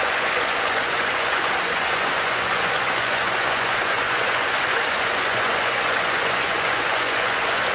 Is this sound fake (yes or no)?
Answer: yes